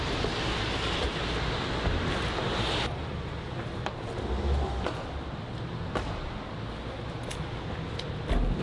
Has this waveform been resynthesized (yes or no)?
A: no